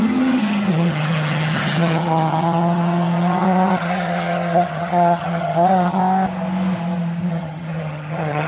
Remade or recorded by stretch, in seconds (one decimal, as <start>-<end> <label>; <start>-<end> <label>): 0.0-6.0 remade; 6.0-7.3 recorded; 7.3-8.5 remade